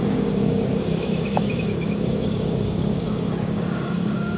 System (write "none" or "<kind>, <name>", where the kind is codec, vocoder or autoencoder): codec, DAC